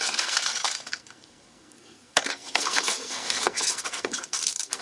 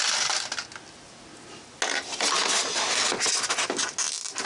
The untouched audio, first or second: second